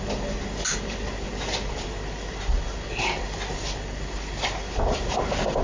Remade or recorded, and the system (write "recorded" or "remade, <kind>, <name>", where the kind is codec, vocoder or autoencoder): recorded